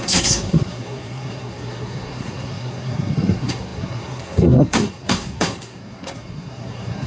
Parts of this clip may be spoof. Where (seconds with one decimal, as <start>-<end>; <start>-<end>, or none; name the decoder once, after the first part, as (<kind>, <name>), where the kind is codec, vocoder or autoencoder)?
0.0-7.1 (codec, SNAC)